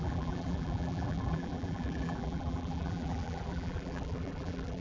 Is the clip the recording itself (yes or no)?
no